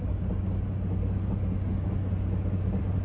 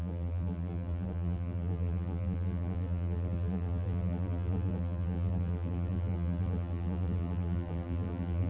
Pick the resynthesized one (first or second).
second